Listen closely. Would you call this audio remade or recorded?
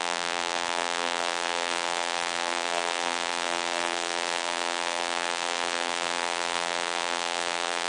remade